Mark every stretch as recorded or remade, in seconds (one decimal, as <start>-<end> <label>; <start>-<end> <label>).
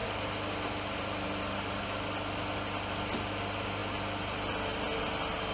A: 0.0-5.5 recorded